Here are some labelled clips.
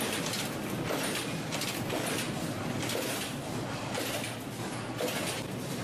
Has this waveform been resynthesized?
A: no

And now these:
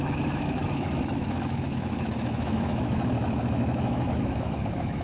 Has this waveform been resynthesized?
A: yes